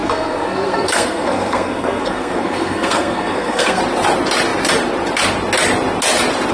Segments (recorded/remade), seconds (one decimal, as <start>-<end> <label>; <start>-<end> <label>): 0.0-3.8 remade; 3.8-6.5 recorded